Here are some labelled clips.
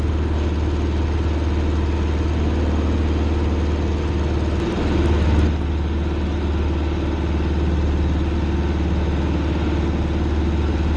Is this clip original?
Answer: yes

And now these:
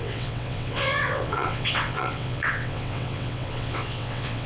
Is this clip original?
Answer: no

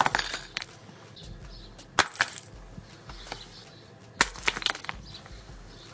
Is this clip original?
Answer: yes